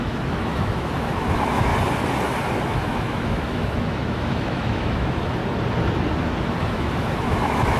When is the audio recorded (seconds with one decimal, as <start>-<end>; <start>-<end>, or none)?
1.7-2.6; 5.4-6.6